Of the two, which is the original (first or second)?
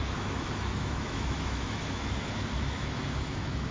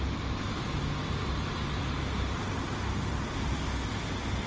second